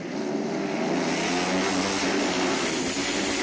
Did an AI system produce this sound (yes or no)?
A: no